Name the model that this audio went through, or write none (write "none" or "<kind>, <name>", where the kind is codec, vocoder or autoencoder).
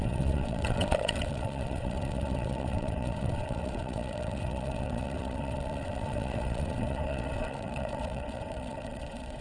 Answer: vocoder, WaveNeXt